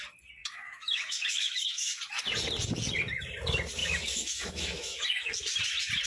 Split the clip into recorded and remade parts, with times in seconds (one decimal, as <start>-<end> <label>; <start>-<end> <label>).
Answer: 0.0-0.4 recorded; 0.4-2.0 remade; 2.0-3.8 recorded; 3.8-5.3 remade; 5.3-6.1 recorded